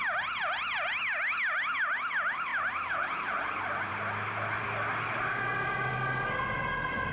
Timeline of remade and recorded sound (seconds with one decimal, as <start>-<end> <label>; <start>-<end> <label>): 0.0-7.1 recorded